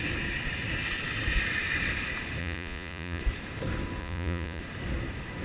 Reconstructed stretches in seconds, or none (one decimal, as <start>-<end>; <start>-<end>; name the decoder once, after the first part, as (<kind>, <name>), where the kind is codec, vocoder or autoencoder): 2.4-3.2 (vocoder, Vocos); 4.0-4.6